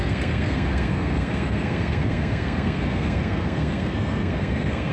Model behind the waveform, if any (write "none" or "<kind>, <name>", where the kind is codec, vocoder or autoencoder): codec, SNAC